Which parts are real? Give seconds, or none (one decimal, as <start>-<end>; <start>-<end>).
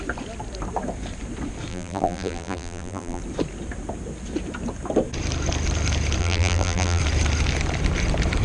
0.0-1.7; 3.2-6.2; 7.0-8.4